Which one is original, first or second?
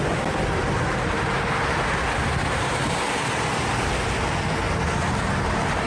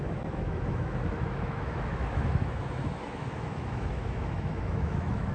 first